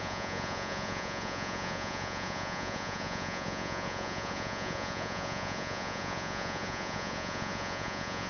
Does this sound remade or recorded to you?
remade